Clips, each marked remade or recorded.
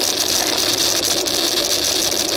recorded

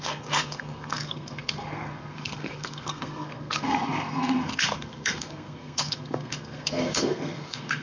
remade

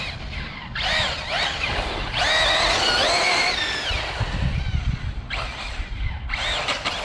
recorded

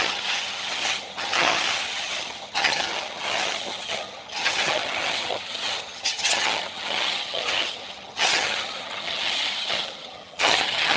remade